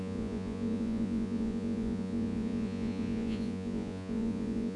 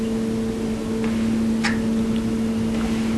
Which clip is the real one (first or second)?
second